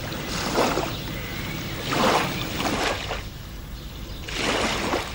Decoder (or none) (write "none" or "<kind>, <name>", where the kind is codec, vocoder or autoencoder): none